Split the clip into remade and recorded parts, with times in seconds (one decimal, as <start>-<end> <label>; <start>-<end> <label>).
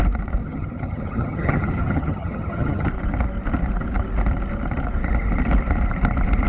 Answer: 0.0-0.4 recorded; 0.4-2.9 remade; 2.9-6.5 recorded